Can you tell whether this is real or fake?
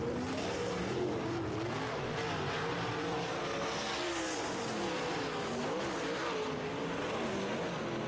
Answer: real